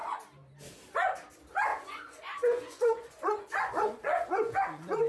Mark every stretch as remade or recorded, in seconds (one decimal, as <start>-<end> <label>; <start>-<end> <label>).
0.0-1.7 recorded; 1.7-5.1 remade